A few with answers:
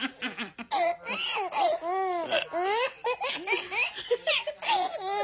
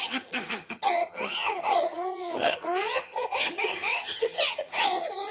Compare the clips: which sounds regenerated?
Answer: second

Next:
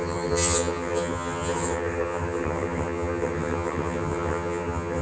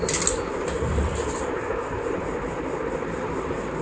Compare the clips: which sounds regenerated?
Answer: first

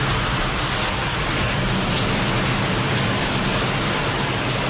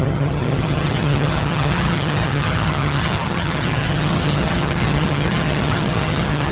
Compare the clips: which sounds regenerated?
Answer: second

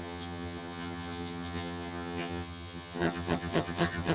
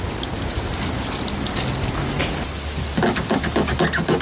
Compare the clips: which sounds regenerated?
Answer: first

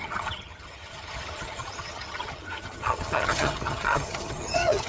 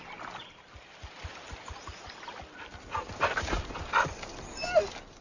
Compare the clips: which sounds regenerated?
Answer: first